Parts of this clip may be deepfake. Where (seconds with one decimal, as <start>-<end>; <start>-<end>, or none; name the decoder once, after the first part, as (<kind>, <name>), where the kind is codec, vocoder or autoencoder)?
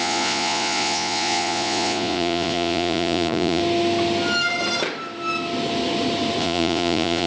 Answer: 0.0-3.6 (vocoder, Vocos); 6.4-7.3